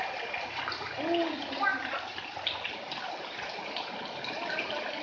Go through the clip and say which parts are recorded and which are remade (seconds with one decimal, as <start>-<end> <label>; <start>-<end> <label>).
0.0-5.0 recorded